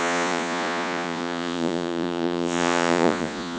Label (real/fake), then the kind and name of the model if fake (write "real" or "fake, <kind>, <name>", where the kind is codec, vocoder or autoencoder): fake, vocoder, Vocos